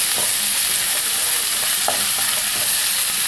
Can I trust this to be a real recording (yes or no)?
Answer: yes